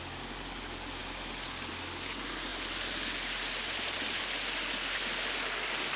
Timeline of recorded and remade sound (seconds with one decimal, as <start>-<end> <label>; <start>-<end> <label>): 0.0-6.0 recorded

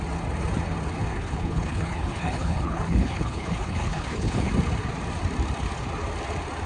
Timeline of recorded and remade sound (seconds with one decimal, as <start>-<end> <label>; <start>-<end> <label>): 0.0-1.1 recorded; 1.1-4.5 remade; 4.5-6.7 recorded